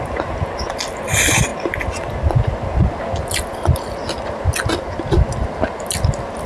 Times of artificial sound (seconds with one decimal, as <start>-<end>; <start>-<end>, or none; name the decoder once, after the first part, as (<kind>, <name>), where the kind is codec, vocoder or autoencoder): none

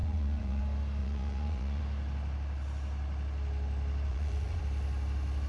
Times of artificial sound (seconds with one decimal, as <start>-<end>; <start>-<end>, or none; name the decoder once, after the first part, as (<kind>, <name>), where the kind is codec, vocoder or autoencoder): 0.0-0.6 (vocoder, Vocos); 1.0-1.8; 4.1-4.6

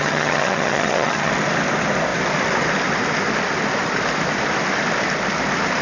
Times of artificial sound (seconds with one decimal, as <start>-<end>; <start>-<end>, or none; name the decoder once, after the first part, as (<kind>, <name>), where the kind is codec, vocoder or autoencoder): 0.0-1.3 (vocoder, HiFi-GAN)

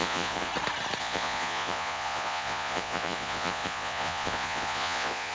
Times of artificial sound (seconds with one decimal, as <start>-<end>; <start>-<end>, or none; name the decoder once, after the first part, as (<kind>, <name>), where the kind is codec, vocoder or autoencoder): 0.0-0.5 (vocoder, Vocos); 1.0-5.3